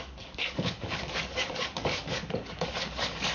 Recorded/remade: remade